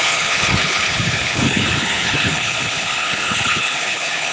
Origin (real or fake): fake